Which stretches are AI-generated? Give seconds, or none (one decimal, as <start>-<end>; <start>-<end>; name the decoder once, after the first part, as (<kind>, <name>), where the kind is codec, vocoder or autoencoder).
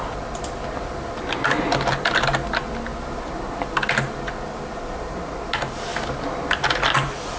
none